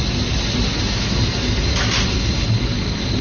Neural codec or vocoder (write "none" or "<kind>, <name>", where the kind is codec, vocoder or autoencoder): none